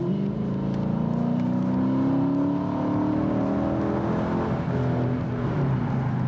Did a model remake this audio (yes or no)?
no